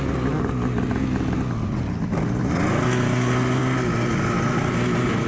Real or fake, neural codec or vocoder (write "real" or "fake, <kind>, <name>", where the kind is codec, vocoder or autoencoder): real